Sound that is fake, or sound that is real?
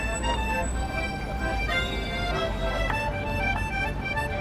real